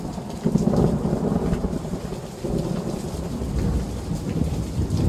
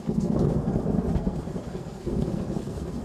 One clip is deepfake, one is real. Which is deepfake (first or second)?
second